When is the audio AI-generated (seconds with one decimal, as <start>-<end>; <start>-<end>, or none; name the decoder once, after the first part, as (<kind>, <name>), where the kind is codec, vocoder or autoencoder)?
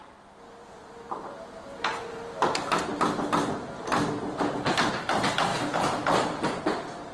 0.6-4.9 (vocoder, BigVGAN v2)